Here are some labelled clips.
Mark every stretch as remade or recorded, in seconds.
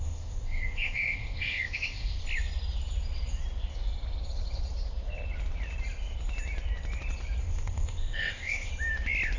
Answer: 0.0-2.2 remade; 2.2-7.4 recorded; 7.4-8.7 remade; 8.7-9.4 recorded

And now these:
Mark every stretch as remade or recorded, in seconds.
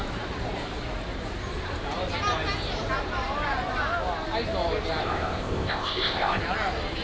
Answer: 0.0-5.0 recorded; 5.0-6.4 remade; 6.4-7.0 recorded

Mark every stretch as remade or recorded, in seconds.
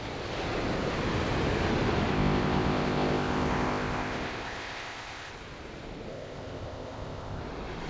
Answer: 0.0-2.1 recorded; 2.1-5.3 remade; 5.3-6.1 recorded; 6.1-7.4 remade; 7.4-7.9 recorded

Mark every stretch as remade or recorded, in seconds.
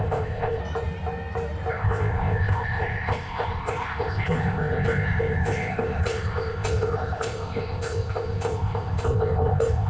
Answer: 0.0-0.6 remade; 0.6-1.7 recorded; 1.7-9.9 remade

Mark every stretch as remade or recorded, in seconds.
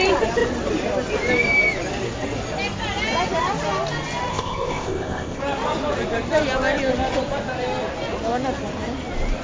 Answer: 0.0-4.3 recorded; 4.3-5.4 remade; 5.4-9.4 recorded